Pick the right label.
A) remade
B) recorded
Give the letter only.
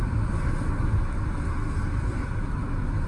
B